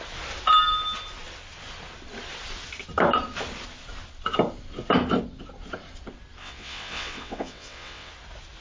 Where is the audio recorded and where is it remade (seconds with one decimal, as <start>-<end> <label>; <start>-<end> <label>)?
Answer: 0.0-6.4 recorded; 6.4-8.1 remade; 8.1-8.6 recorded